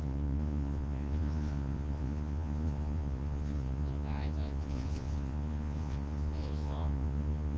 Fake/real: fake